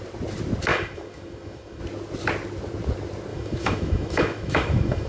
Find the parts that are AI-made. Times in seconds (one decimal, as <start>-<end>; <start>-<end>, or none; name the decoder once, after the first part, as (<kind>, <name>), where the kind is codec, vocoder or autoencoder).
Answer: 0.7-1.8 (autoencoder, DAC-VAE); 3.3-5.1